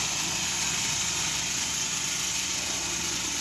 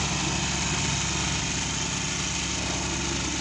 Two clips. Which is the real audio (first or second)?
second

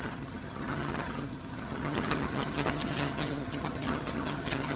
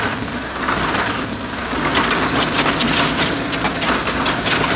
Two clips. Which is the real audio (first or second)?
second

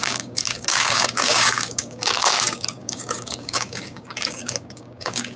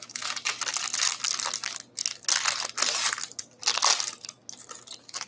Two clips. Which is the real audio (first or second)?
second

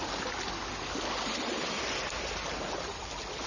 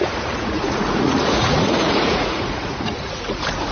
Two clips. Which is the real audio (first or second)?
first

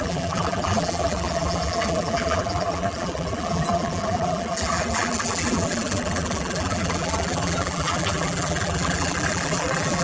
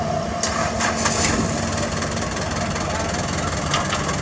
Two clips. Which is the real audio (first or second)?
second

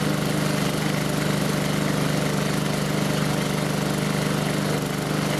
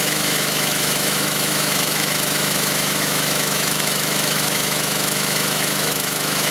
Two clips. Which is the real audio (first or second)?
first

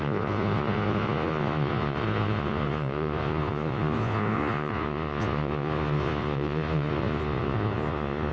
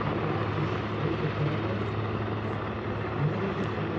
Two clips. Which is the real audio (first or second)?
second